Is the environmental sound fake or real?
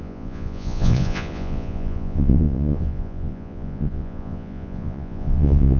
fake